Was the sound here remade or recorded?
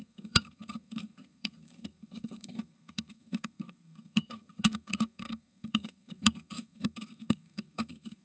remade